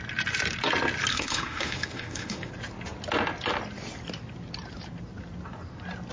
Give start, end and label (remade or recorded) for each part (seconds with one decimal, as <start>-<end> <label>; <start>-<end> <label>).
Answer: 0.0-1.1 recorded; 1.1-2.5 remade; 2.5-6.1 recorded